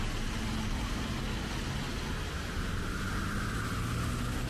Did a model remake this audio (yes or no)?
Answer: no